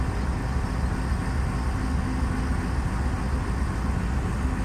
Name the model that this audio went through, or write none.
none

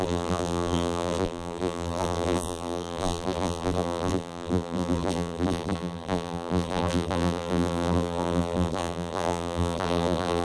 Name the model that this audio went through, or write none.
vocoder, BigVGAN v2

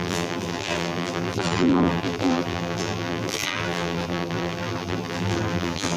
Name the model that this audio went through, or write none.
vocoder, BigVGAN v2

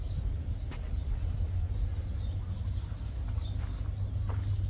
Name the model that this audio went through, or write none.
none